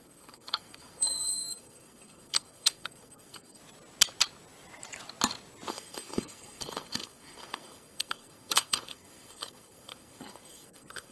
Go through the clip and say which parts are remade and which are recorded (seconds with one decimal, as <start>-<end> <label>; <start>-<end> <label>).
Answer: 0.0-3.6 remade; 3.6-5.7 recorded; 5.7-11.1 remade